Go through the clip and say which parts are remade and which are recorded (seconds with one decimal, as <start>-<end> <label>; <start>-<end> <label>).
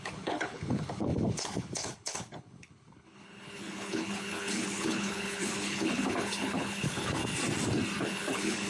0.0-7.2 remade; 7.2-8.0 recorded; 8.0-8.7 remade